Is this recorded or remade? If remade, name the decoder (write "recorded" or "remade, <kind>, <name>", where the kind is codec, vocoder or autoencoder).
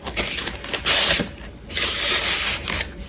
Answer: recorded